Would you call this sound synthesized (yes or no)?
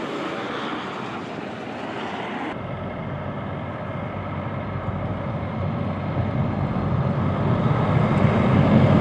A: no